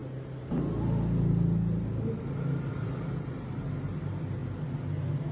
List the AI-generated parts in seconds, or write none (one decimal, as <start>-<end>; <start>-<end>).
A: none